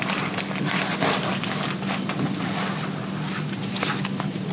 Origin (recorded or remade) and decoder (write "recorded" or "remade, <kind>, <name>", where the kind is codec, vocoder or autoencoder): recorded